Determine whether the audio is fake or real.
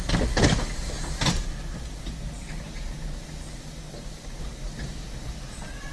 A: real